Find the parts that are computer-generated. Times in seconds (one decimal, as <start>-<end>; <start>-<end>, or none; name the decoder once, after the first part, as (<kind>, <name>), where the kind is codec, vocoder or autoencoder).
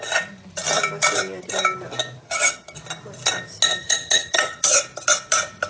2.2-2.8 (vocoder, HiFi-GAN); 3.8-4.8